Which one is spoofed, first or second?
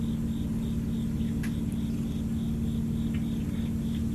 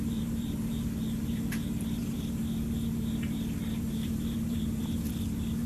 second